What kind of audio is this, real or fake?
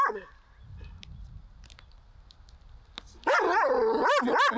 real